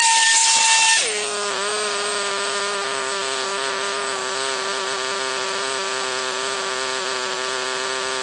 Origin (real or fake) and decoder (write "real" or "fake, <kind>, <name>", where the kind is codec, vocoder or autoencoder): real